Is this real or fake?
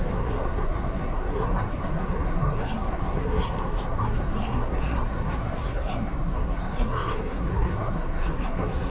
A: fake